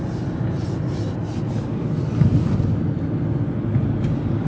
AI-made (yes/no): no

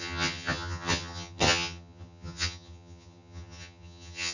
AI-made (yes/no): yes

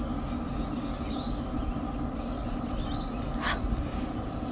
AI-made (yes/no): no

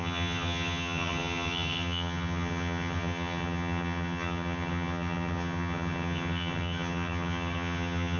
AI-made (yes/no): yes